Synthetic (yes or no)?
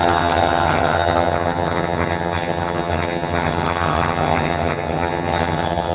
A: yes